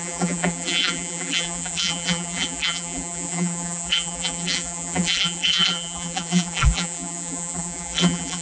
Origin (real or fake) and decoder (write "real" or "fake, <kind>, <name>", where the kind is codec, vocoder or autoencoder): fake, vocoder, BigVGAN v2